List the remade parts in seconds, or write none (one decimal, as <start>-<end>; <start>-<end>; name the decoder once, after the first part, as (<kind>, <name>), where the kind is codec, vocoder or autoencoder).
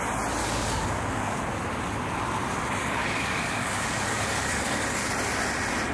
0.4-1.4 (codec, DAC); 2.8-4.5